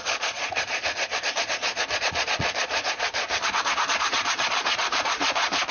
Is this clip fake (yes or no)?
yes